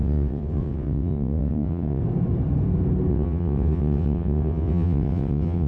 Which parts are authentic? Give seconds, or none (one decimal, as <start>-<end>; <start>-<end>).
2.0-3.1